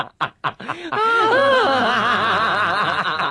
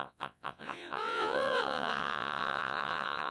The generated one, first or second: second